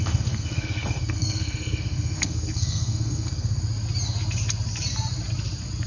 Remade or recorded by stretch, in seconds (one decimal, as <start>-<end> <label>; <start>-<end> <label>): 0.0-3.6 remade; 3.6-5.9 recorded